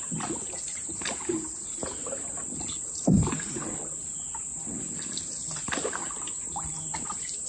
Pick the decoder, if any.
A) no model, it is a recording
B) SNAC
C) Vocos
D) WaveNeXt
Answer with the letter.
A